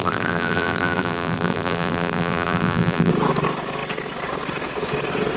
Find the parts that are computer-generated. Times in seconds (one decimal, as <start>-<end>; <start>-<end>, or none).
0.0-3.1